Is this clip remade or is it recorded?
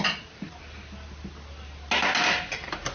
recorded